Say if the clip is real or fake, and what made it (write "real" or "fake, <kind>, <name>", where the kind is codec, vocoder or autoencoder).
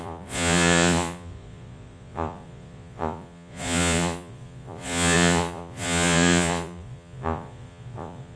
fake, vocoder, Vocos